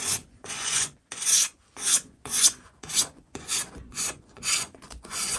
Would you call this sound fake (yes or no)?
yes